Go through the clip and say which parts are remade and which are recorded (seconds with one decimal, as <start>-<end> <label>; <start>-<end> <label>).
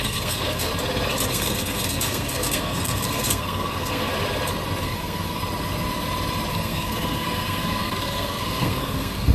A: 0.0-0.7 remade; 0.7-1.3 recorded; 1.3-4.1 remade; 4.1-4.8 recorded; 4.8-5.4 remade; 5.4-6.5 recorded; 6.5-9.3 remade